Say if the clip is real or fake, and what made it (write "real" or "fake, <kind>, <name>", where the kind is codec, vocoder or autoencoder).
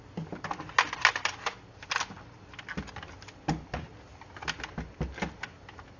real